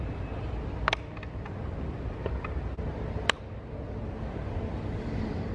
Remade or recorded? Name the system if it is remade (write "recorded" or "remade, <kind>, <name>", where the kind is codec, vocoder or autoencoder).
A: recorded